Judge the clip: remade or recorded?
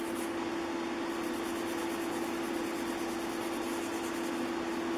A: recorded